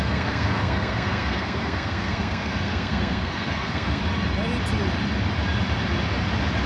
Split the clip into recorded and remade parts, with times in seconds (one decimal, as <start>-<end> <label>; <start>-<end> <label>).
0.0-4.0 remade; 4.0-6.7 recorded